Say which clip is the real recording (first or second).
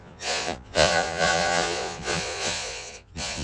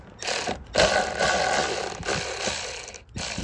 second